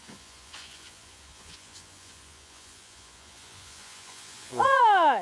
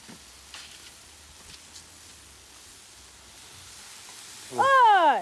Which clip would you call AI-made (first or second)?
first